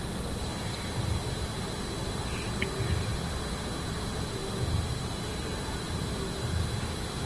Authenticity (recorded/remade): recorded